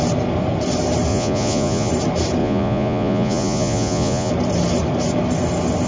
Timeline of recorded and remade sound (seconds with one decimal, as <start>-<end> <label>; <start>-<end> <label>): 0.0-1.1 recorded; 1.1-1.9 remade; 1.9-2.4 recorded; 2.4-4.3 remade; 4.3-5.9 recorded

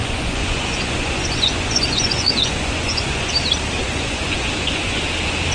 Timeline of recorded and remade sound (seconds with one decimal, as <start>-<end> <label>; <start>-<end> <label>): 0.0-3.3 remade; 3.3-3.8 recorded; 3.8-5.0 remade; 5.0-5.5 recorded

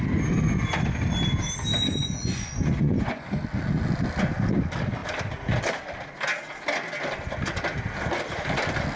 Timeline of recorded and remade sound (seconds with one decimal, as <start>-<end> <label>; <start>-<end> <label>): 0.0-1.7 recorded; 1.7-3.4 remade; 3.4-9.0 recorded

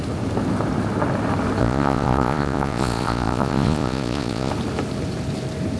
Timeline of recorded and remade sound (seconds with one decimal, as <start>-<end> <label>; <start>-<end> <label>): 0.0-1.6 recorded; 1.6-4.5 remade; 4.5-5.8 recorded

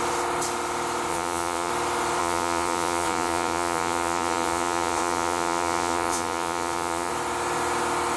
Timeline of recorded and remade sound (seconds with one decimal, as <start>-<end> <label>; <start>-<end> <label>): 0.0-1.1 recorded; 1.1-1.7 remade; 1.7-2.2 recorded; 2.2-7.1 remade; 7.1-8.2 recorded

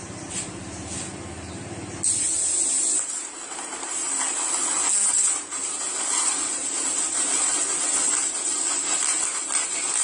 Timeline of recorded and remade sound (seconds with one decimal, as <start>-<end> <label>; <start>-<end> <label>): 0.0-10.0 recorded

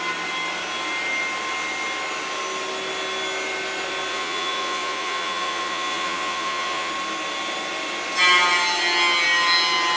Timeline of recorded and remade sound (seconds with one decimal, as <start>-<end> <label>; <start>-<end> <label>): 0.0-4.1 recorded; 4.1-6.9 remade; 6.9-10.0 recorded

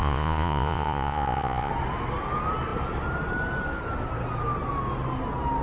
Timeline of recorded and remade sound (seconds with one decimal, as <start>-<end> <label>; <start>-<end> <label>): 0.0-1.7 remade; 1.7-5.6 recorded